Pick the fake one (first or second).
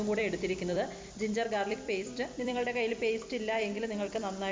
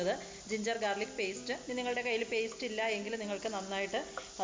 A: first